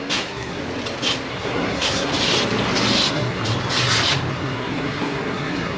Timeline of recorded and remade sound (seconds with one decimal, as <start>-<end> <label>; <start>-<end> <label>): 0.0-0.6 remade; 0.6-1.3 recorded; 1.3-2.1 remade; 2.1-3.1 recorded; 3.1-3.5 remade; 3.5-4.3 recorded; 4.3-5.8 remade